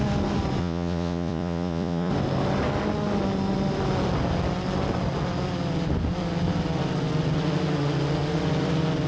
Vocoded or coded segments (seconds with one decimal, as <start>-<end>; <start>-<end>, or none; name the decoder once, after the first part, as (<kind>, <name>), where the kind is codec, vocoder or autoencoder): 0.6-2.1 (vocoder, Vocos)